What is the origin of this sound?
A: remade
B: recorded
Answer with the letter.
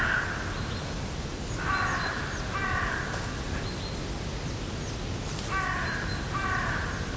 B